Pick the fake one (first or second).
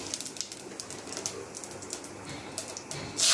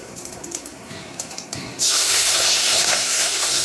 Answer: second